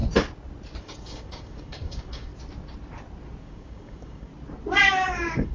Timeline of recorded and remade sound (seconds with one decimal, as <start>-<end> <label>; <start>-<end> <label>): 0.0-0.8 recorded; 0.8-2.3 remade; 2.3-3.4 recorded; 3.4-4.3 remade; 4.3-4.9 recorded; 4.9-5.5 remade